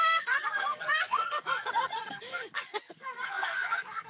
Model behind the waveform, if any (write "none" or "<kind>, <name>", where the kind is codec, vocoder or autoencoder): codec, SNAC